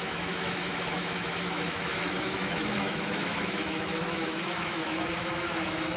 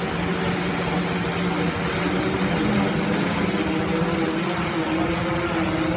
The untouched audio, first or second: second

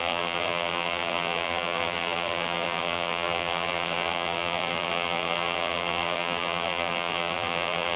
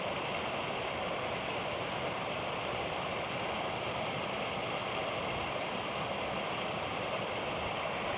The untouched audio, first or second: second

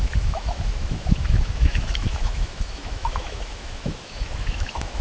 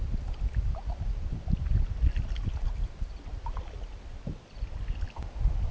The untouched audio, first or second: second